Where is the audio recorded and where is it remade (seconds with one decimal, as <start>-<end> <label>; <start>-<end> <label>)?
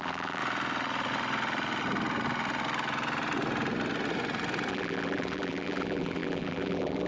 0.0-0.4 remade; 0.4-4.7 recorded; 4.7-7.1 remade